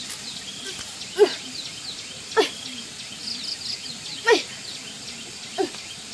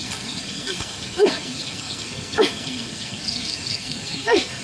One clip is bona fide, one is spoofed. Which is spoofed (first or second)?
second